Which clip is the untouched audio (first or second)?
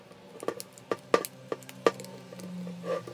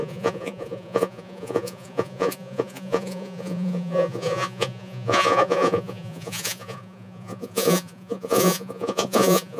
first